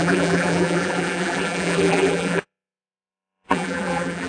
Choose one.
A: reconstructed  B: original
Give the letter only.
A